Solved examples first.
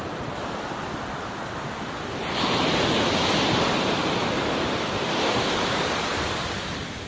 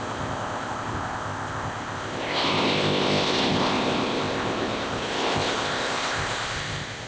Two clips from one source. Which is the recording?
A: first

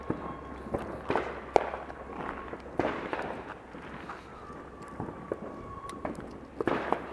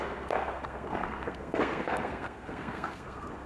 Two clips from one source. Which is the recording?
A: first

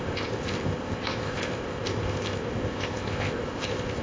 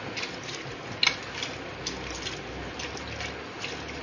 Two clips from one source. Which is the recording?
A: second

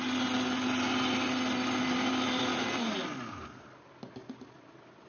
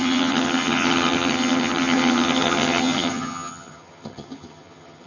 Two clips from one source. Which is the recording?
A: first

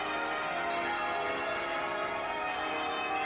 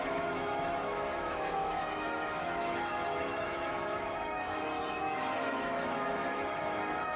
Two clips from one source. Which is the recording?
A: first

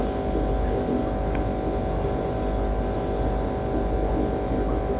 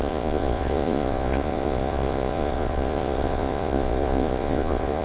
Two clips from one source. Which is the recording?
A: first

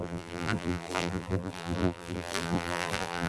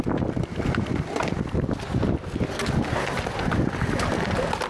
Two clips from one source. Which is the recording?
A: second